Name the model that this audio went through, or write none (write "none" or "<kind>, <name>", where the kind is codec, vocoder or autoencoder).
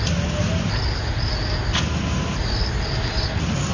none